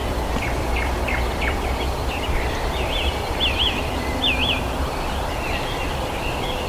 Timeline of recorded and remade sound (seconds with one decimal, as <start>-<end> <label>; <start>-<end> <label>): 0.0-4.0 remade; 4.0-4.4 recorded; 4.4-5.3 remade; 5.3-6.7 recorded